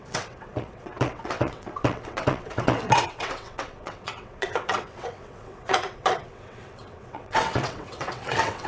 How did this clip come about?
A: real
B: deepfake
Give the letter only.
B